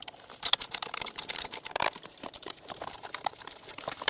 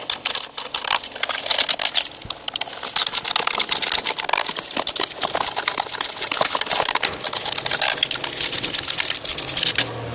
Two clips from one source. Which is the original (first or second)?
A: second